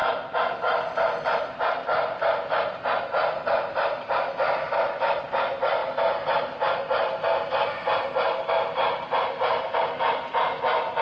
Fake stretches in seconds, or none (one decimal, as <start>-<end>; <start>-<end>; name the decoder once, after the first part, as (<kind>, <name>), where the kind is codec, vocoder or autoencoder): none